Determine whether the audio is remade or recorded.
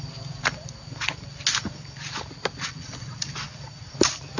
recorded